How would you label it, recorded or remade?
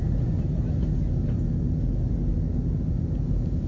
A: recorded